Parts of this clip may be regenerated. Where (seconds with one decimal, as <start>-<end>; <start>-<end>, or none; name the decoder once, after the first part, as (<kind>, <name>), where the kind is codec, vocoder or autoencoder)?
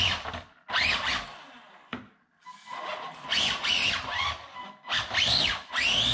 none